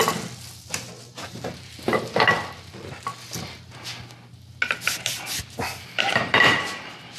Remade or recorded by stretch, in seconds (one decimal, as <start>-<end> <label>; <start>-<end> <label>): 0.0-1.1 recorded; 1.1-3.1 remade; 3.1-6.0 recorded; 6.0-7.2 remade